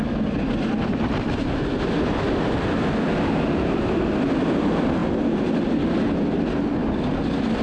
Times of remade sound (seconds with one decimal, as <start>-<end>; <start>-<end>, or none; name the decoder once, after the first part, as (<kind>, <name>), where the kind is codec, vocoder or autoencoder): none